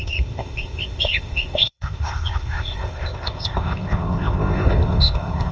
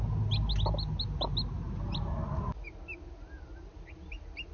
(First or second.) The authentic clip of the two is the second